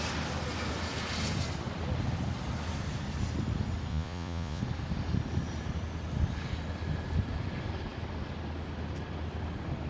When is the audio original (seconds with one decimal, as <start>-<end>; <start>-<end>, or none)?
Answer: 0.0-3.9; 4.6-9.9